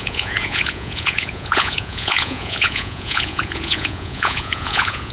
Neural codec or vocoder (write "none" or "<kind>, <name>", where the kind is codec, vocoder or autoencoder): vocoder, Vocos